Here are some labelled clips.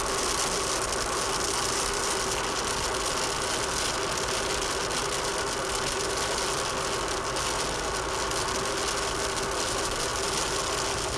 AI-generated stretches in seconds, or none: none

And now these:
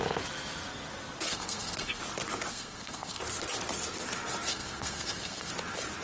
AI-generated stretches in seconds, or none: 1.3-2.0 (codec, SNAC); 2.5-3.2; 4.5-5.5